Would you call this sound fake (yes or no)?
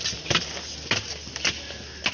no